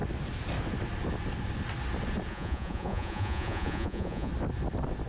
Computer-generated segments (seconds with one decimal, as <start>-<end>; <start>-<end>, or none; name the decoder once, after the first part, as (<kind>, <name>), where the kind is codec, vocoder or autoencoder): 2.3-4.3 (vocoder, Vocos)